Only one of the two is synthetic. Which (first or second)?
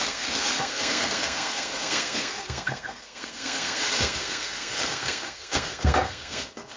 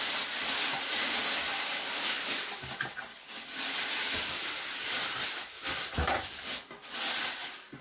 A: first